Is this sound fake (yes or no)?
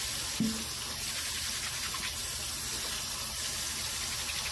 no